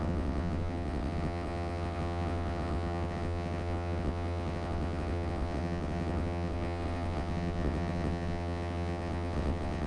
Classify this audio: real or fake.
fake